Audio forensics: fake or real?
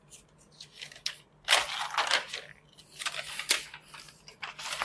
real